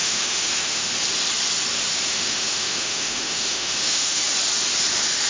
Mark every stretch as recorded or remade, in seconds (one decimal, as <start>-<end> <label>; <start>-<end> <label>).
0.0-0.9 remade; 0.9-2.1 recorded; 2.1-4.2 remade; 4.2-5.3 recorded